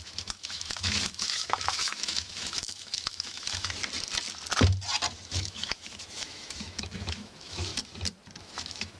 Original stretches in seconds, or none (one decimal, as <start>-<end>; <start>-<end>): 3.8-5.3; 7.7-8.4